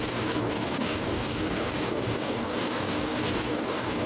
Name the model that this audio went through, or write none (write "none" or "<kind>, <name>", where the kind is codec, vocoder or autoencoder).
codec, DAC